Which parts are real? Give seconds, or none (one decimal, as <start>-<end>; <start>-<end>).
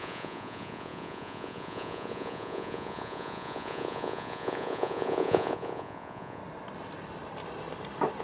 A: 6.4-8.2